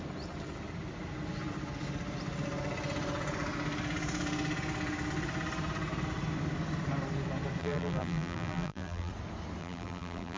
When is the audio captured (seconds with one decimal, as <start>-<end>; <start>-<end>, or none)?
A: 0.0-7.6; 9.1-9.6